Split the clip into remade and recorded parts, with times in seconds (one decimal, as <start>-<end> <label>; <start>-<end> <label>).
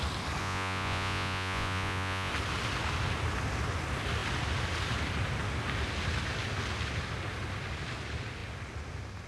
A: 0.0-0.4 recorded; 0.4-2.3 remade; 2.3-9.3 recorded